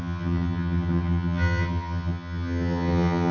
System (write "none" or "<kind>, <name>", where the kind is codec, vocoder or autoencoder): vocoder, HiFi-GAN